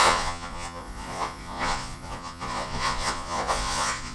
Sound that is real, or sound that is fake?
fake